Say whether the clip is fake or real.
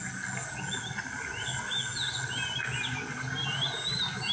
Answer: real